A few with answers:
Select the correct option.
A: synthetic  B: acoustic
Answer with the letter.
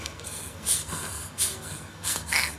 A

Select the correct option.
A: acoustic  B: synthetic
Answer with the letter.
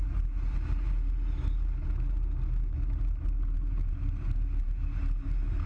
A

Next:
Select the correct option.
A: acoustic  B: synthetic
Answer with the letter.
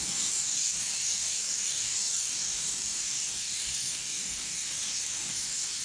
B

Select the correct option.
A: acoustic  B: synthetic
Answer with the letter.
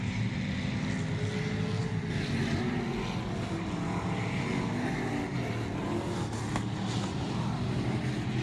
A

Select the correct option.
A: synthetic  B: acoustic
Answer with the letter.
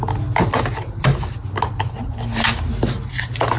B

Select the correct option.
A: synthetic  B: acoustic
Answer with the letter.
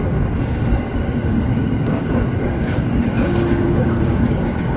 A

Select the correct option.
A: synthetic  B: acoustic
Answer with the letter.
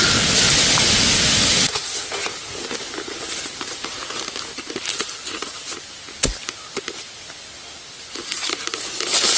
B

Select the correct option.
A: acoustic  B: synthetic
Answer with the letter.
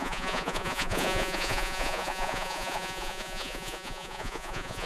B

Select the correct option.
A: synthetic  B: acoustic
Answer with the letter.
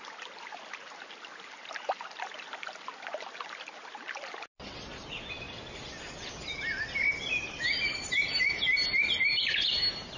B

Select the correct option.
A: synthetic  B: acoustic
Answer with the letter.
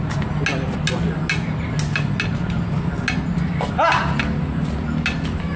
B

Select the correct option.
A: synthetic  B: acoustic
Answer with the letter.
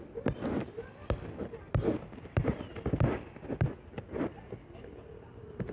B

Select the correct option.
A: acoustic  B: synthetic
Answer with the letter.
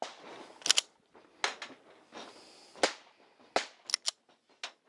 A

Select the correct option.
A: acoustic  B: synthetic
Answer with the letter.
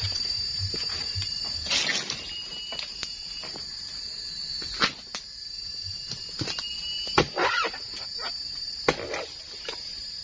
A